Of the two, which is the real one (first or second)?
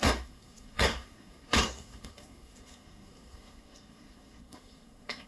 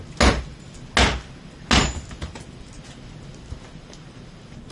second